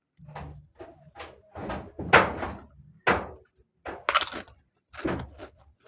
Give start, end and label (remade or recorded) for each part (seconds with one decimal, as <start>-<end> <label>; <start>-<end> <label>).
0.0-5.9 recorded

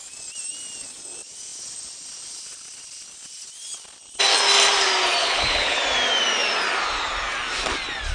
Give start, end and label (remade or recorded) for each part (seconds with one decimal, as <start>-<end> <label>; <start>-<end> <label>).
0.0-5.2 recorded; 5.2-5.8 remade; 5.8-8.1 recorded

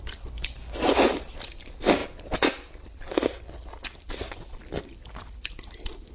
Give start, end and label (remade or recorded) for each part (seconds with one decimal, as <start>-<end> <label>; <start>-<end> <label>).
0.0-6.1 recorded

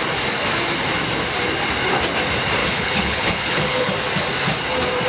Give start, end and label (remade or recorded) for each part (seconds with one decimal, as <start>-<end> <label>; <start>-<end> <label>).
0.0-2.6 recorded; 2.6-3.9 remade; 3.9-5.1 recorded

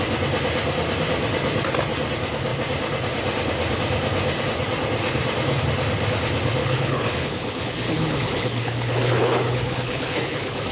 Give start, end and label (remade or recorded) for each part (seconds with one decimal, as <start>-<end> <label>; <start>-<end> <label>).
0.0-6.6 recorded; 6.6-10.7 remade

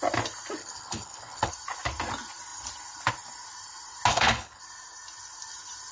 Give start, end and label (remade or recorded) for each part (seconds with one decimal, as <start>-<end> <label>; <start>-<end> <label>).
0.0-0.6 recorded; 0.6-1.5 remade; 1.5-4.1 recorded; 4.1-4.6 remade; 4.6-5.9 recorded